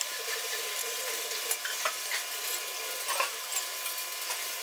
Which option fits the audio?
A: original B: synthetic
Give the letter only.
A